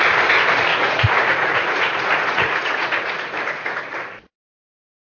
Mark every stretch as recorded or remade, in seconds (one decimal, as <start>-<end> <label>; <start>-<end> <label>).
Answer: 0.0-0.7 recorded; 0.7-3.8 remade; 3.8-5.1 recorded